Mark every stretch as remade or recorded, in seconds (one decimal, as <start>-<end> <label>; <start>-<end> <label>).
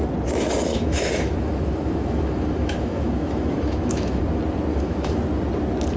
0.0-0.7 recorded; 0.7-4.2 remade; 4.2-4.7 recorded; 4.7-5.2 remade; 5.2-6.0 recorded